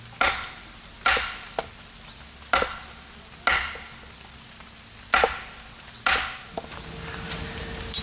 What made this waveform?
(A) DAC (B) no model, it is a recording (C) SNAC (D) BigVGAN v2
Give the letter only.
B